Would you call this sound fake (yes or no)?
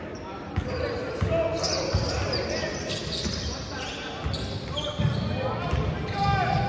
no